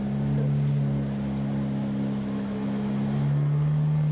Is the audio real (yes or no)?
yes